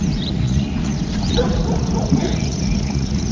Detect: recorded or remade remade